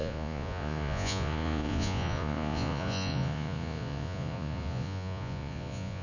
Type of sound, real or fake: fake